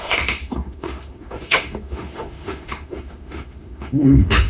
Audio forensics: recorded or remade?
remade